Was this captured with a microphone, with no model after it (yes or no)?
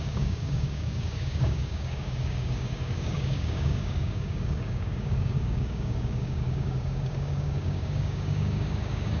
no